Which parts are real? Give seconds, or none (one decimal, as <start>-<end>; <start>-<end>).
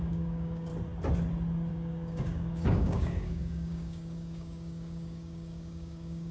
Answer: 0.7-1.7